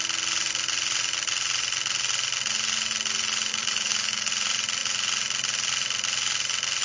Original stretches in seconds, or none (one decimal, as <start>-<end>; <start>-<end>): 0.0-3.5; 4.3-6.8